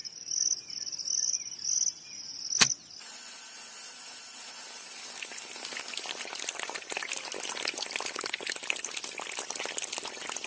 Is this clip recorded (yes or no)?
yes